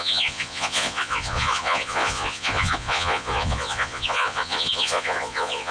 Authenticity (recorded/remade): remade